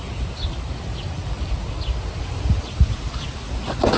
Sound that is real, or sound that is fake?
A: real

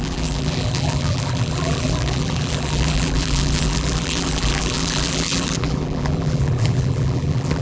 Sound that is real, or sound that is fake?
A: fake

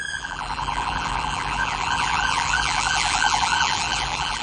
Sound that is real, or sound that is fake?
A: fake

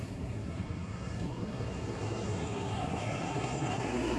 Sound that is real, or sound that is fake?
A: fake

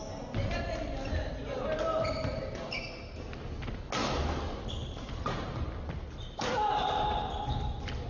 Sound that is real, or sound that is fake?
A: real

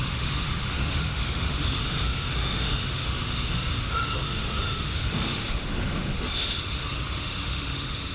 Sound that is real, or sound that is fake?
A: fake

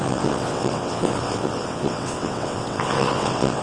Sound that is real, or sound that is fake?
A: fake